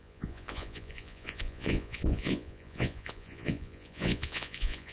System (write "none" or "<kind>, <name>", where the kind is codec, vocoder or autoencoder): vocoder, Vocos